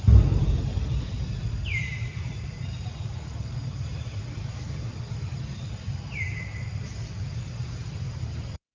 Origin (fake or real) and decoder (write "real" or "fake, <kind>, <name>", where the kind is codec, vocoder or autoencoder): fake, vocoder, BigVGAN v2